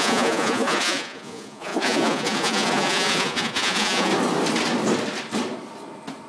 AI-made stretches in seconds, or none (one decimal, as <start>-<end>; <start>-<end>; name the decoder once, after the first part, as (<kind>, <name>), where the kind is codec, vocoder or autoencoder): 0.0-4.1 (vocoder, Vocos)